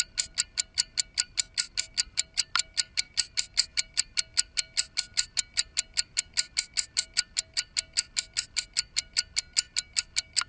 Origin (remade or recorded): recorded